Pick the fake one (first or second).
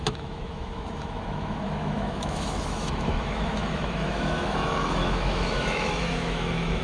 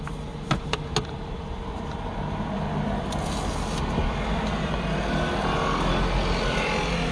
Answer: first